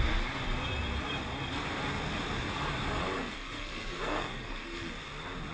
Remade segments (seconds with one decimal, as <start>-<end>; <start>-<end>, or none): 3.2-4.9